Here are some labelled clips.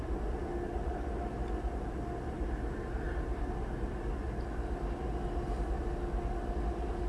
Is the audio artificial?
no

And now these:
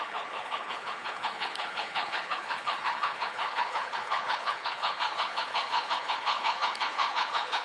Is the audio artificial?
yes